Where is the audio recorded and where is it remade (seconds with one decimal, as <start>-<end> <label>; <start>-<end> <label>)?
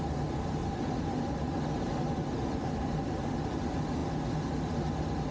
0.0-5.3 recorded